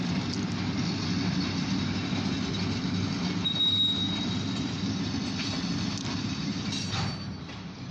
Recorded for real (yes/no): yes